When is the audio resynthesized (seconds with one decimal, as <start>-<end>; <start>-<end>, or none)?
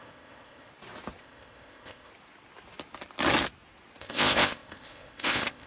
0.0-0.7; 1.2-2.1; 4.0-5.7